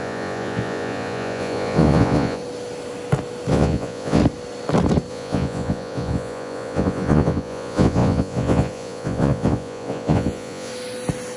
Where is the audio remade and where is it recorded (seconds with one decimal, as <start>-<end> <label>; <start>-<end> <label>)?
0.0-2.4 remade; 2.4-3.5 recorded; 3.5-4.2 remade; 4.2-5.1 recorded; 5.1-10.7 remade; 10.7-11.4 recorded